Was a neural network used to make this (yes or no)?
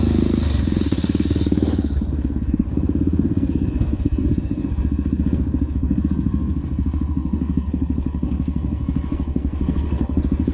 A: yes